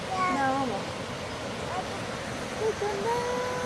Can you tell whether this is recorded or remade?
recorded